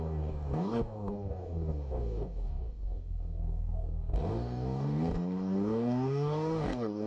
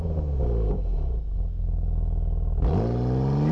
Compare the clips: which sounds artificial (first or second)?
first